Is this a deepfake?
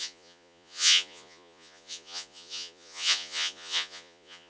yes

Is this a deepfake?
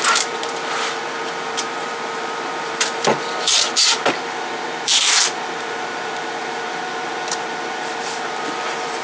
yes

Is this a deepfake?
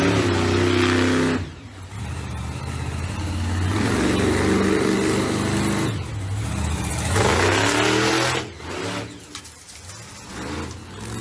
no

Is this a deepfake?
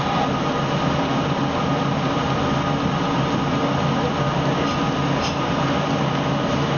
no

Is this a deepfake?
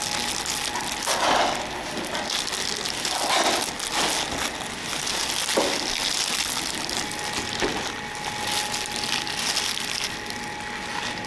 no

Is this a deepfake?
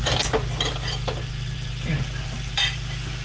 no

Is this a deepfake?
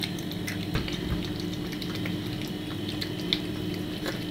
no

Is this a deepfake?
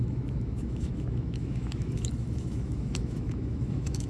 yes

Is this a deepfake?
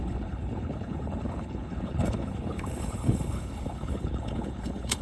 yes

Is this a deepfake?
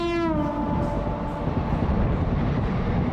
no